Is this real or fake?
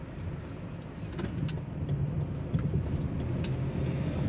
real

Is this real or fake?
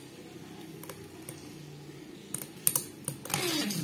real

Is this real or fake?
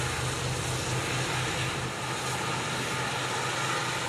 real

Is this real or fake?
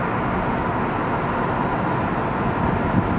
real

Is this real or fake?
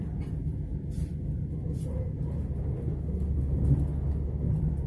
real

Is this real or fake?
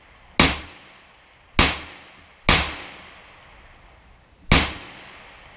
real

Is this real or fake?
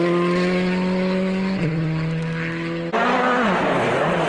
real